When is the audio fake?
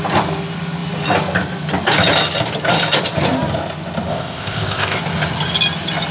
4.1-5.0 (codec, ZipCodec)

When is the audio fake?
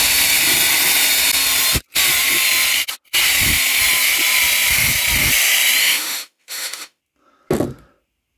5.8-7.0 (autoencoder, DAC-VAE)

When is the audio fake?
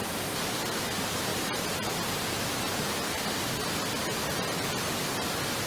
none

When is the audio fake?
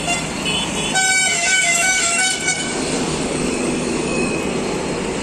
1.3-4.4 (codec, DAC)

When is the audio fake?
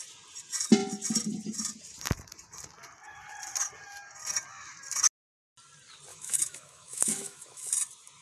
6.1-7.7 (autoencoder, DAC-VAE)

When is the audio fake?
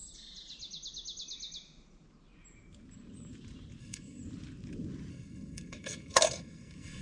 3.8-4.2 (codec, SNAC); 5.1-7.0